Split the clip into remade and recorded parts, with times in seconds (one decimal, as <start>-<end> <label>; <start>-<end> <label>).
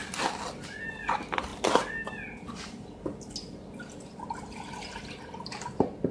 0.0-6.1 recorded